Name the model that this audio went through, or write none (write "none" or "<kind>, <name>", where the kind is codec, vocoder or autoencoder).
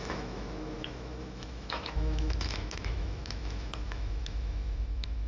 autoencoder, DAC-VAE